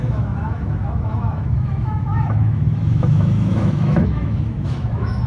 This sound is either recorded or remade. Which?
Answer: remade